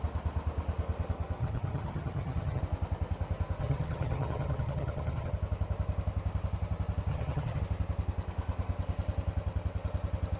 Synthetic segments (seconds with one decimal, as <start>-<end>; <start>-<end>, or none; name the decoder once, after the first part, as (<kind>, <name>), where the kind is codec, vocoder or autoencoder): 1.4-2.6 (vocoder, HiFi-GAN); 3.6-5.3; 7.1-7.6